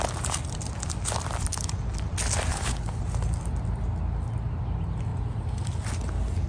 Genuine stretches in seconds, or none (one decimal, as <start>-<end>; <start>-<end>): 0.0-2.5; 3.0-6.5